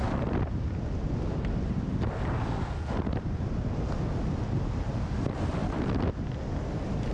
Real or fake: real